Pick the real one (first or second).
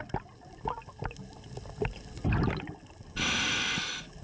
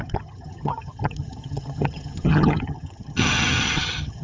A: first